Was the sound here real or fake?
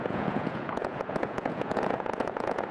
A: fake